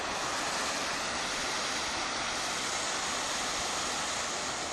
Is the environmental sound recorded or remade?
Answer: recorded